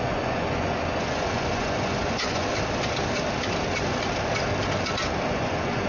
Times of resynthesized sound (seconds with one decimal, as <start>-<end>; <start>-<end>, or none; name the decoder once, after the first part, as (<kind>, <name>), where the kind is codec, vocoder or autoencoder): 0.0-2.5 (vocoder, Vocos); 5.3-5.9